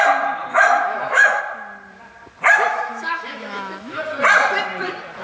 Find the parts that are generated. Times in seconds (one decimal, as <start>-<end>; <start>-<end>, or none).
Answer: 0.5-1.4; 2.7-4.0